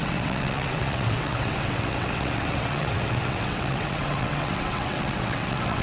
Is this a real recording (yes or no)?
no